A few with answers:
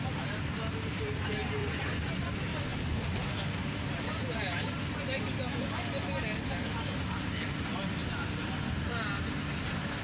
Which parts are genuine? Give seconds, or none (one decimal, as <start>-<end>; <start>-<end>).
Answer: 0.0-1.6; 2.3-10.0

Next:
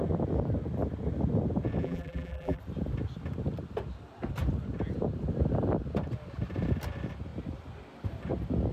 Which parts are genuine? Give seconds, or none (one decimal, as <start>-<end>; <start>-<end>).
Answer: 0.0-1.8; 2.6-8.7

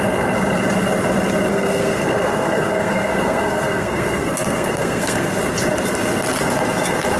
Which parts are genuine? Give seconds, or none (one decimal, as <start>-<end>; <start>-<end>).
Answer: 0.0-1.5; 5.4-7.2